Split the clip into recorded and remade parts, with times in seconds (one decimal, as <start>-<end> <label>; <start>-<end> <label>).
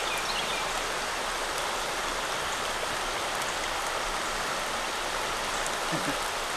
0.0-6.6 recorded